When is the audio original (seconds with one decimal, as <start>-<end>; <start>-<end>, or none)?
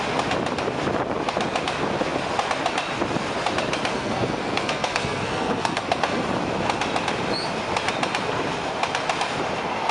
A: 0.0-3.9; 6.2-9.9